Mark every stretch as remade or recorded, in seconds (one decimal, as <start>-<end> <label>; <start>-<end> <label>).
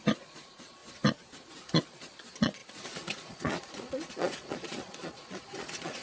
0.0-0.8 remade; 0.8-1.7 recorded; 1.7-6.0 remade